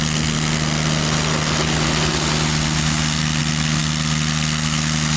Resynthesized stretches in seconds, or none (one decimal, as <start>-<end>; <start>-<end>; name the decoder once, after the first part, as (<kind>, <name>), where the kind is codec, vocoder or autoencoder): none

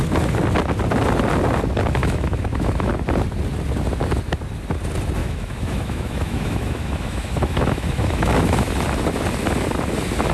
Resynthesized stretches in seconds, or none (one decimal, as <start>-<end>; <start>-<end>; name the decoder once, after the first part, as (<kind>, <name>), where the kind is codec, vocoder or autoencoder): 2.0-2.9 (autoencoder, DAC-VAE); 5.2-8.7

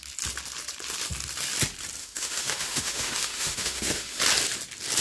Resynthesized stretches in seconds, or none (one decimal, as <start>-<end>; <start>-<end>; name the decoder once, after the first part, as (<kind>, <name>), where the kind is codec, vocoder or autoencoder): 2.0-4.2 (autoencoder, DAC-VAE)

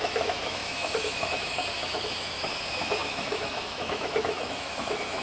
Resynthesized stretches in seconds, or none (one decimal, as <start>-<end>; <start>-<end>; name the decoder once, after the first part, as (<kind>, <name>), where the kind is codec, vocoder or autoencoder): 0.0-5.2 (autoencoder, DAC-VAE)

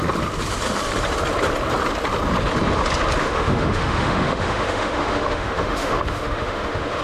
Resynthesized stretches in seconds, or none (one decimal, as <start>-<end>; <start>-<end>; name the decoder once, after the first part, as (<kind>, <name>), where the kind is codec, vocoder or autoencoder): 3.2-7.0 (autoencoder, DAC-VAE)

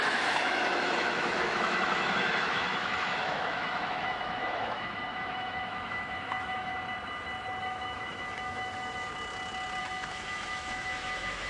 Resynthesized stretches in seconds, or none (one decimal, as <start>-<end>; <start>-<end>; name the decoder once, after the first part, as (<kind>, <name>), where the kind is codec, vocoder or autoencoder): 0.0-6.7 (autoencoder, DAC-VAE); 7.6-9.1; 9.8-11.5

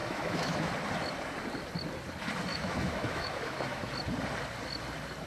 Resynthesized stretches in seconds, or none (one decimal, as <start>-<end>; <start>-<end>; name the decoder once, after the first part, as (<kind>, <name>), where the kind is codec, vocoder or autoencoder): 0.0-0.7 (autoencoder, DAC-VAE); 2.5-3.9